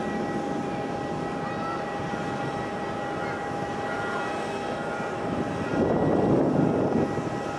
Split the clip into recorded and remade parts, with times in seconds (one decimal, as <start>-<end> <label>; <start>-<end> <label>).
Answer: 0.0-7.6 recorded